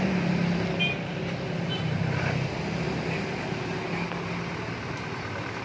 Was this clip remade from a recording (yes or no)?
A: no